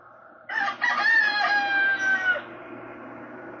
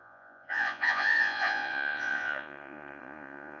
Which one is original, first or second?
first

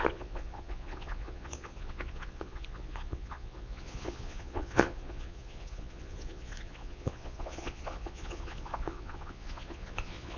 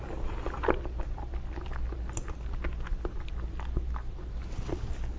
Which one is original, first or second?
second